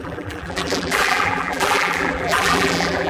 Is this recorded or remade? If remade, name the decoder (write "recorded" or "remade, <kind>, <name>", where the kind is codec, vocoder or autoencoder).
remade, vocoder, BigVGAN v2